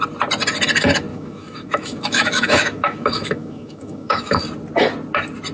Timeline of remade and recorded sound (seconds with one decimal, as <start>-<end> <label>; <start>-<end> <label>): 0.0-1.1 recorded; 1.1-4.4 remade; 4.4-5.5 recorded